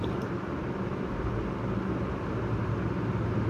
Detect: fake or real real